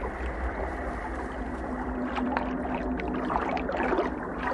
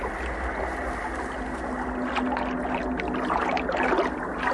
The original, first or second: second